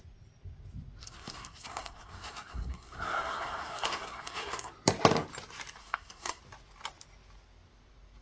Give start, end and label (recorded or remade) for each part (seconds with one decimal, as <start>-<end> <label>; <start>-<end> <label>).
0.0-1.0 recorded; 1.0-4.7 remade; 4.7-5.8 recorded; 5.8-6.4 remade; 6.4-8.2 recorded